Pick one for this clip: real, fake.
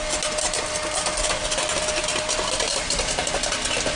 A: real